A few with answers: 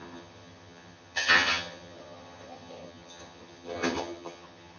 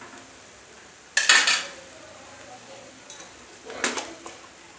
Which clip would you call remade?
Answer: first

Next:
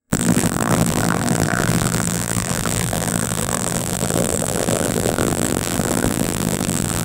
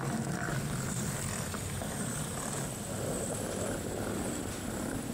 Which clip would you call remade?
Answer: first